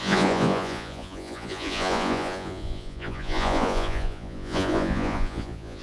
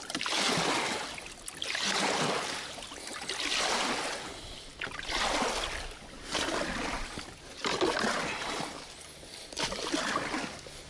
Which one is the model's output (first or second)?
first